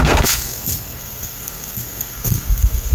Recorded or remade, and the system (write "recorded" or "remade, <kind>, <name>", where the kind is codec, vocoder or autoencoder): remade, codec, SNAC